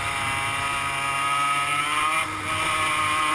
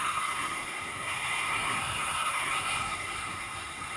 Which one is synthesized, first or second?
second